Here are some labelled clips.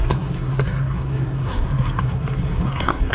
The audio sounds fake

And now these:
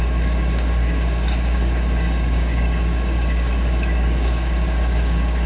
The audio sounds fake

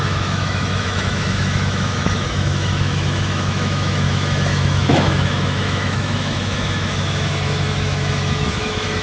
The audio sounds fake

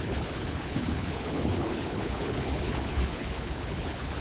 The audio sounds fake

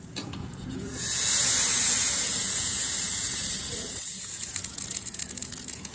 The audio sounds fake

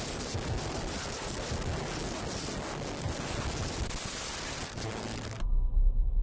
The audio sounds real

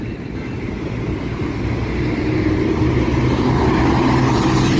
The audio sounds real